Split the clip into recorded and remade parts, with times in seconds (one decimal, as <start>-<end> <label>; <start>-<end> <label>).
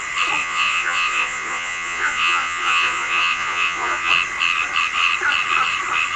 0.0-0.4 recorded; 0.4-4.1 remade; 4.1-6.2 recorded